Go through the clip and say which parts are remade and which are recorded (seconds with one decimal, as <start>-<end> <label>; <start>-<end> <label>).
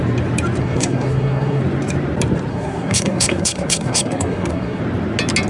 0.0-0.6 recorded; 0.6-1.6 remade; 1.6-2.5 recorded; 2.5-4.8 remade; 4.8-5.5 recorded